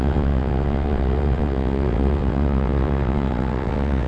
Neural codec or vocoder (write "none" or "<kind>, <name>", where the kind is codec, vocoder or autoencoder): vocoder, WaveNeXt